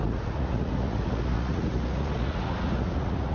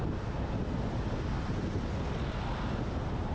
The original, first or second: second